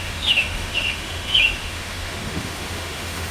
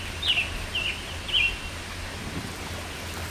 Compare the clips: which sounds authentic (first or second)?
second